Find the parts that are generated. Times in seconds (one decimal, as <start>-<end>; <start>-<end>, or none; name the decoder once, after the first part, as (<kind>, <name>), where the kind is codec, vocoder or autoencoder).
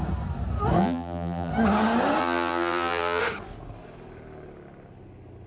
0.8-1.5 (vocoder, BigVGAN v2); 2.2-3.2